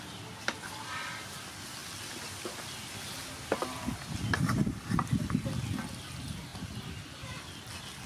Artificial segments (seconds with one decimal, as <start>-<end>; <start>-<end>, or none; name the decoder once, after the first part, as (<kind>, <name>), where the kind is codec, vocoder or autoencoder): none

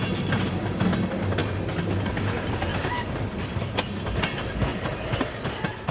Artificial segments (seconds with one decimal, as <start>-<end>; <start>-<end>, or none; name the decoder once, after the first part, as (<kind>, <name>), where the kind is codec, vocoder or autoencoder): 2.7-3.2 (vocoder, BigVGAN v2); 4.7-5.5

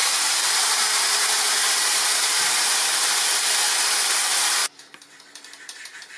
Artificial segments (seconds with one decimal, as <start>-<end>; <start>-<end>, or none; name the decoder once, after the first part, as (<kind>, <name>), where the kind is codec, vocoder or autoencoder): 0.0-3.1 (vocoder, BigVGAN v2); 4.6-6.2